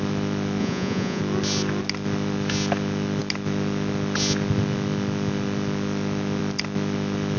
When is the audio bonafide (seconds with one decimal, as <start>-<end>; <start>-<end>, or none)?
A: 0.0-0.6; 1.2-7.4